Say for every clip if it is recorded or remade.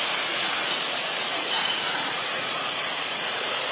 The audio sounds remade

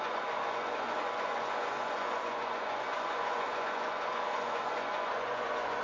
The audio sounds remade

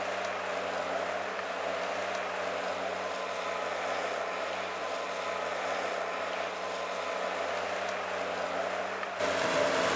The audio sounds recorded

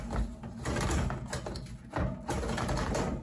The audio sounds recorded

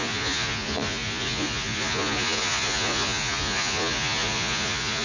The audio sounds remade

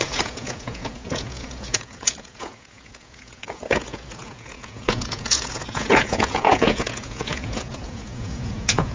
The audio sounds remade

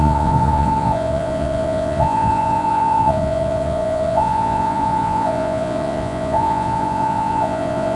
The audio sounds remade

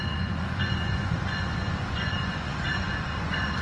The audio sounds remade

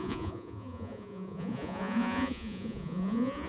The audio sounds remade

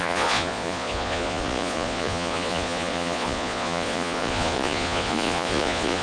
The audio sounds remade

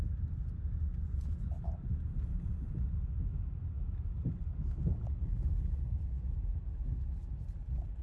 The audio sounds recorded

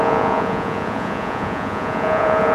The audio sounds remade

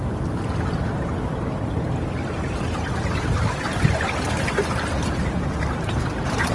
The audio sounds recorded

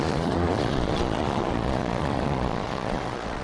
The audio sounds remade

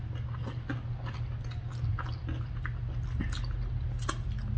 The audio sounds recorded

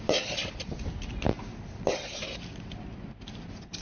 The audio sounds recorded